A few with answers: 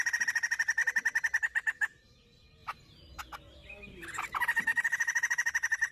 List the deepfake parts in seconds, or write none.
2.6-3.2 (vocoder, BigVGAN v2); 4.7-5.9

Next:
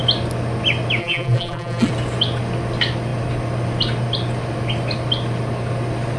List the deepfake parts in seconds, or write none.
1.0-1.9 (vocoder, BigVGAN v2)

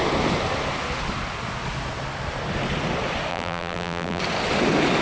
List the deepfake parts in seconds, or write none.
3.3-4.2 (vocoder, BigVGAN v2)

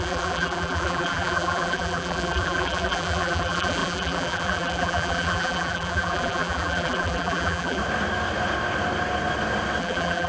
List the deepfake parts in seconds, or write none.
0.0-7.8 (vocoder, BigVGAN v2); 9.8-10.3

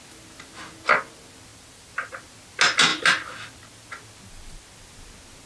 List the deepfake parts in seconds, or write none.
1.5-2.1 (vocoder, BigVGAN v2)

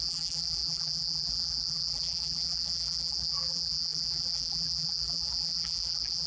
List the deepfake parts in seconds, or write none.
0.0-6.3 (vocoder, BigVGAN v2)